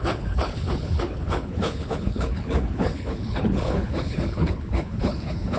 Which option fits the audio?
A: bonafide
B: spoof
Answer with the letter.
B